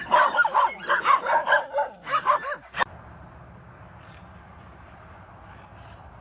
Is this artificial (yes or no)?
yes